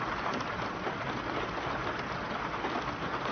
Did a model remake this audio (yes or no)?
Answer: no